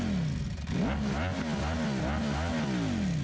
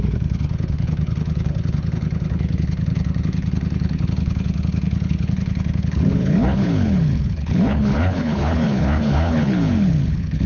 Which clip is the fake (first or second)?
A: second